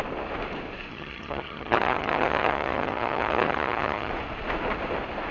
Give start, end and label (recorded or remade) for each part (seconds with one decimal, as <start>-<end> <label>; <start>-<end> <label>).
0.0-0.9 recorded; 0.9-4.1 remade; 4.1-5.3 recorded